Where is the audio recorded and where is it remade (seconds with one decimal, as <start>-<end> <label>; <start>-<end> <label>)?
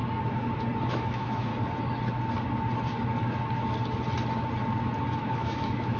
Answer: 0.0-0.9 recorded; 0.9-1.5 remade; 1.5-5.1 recorded; 5.1-6.0 remade